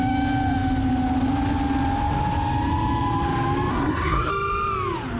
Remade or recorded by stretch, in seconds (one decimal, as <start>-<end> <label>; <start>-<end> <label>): 0.0-3.7 recorded; 3.7-4.3 remade; 4.3-5.2 recorded